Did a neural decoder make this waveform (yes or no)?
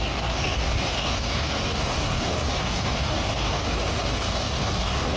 yes